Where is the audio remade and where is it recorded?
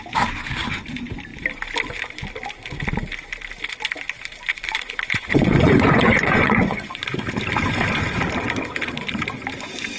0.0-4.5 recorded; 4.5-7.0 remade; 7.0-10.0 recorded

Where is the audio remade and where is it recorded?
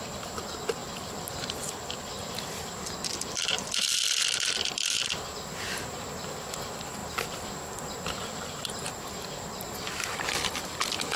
0.0-11.2 remade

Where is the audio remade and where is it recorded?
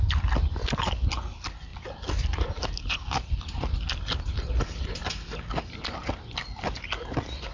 0.0-7.5 recorded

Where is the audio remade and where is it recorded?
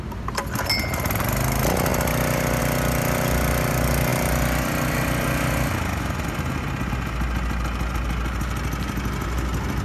0.0-9.8 recorded